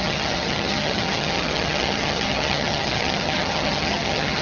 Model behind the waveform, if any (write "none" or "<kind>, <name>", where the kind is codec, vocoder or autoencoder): vocoder, HiFi-GAN